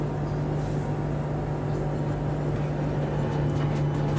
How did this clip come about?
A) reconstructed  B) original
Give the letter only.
B